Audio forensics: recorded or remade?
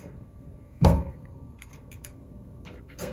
remade